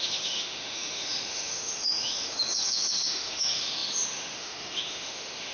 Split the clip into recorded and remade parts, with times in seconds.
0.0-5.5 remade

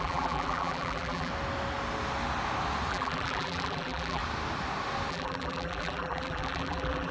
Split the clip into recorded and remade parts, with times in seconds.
0.0-1.3 remade; 1.3-2.9 recorded; 2.9-4.2 remade; 4.2-5.1 recorded; 5.1-7.1 remade

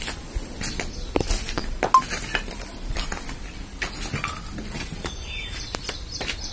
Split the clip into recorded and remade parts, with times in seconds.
0.0-6.5 recorded

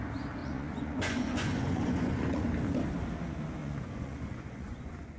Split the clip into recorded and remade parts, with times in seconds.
0.0-0.4 recorded; 0.4-2.4 remade; 2.4-3.6 recorded; 3.6-5.2 remade

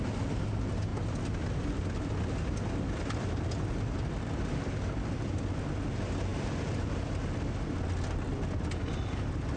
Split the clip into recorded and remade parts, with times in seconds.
0.0-9.6 recorded

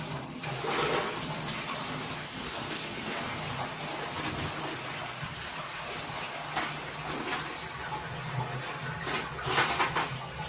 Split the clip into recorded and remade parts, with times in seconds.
0.0-2.2 recorded; 2.2-3.4 remade; 3.4-10.5 recorded

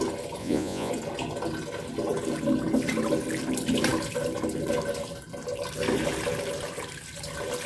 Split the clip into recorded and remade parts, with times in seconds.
0.0-0.4 recorded; 0.4-0.9 remade; 0.9-7.7 recorded

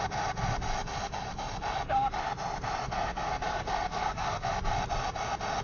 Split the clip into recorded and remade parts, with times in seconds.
0.0-2.8 recorded; 2.8-4.5 remade; 4.5-5.6 recorded